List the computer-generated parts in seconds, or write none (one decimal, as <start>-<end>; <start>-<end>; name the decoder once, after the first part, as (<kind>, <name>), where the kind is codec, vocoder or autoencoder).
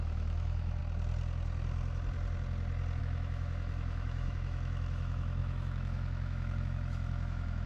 0.0-0.8 (autoencoder, DAC-VAE); 3.0-7.7